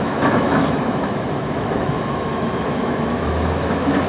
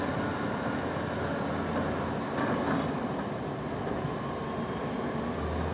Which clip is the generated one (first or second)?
first